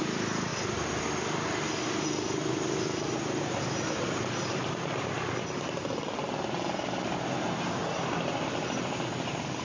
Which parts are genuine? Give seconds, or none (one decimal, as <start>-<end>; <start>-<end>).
0.0-9.6